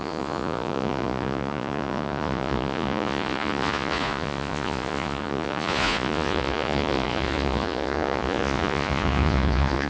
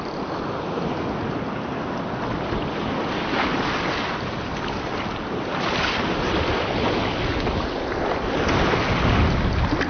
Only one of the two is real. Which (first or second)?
second